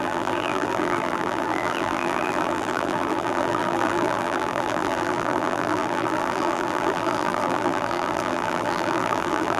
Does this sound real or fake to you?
fake